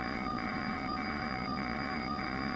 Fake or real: fake